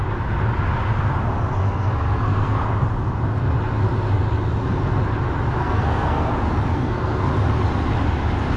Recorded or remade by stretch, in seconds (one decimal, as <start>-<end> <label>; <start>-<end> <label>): 0.0-1.6 recorded; 1.6-2.6 remade; 2.6-5.6 recorded; 5.6-6.3 remade; 6.3-6.7 recorded; 6.7-7.3 remade; 7.3-8.6 recorded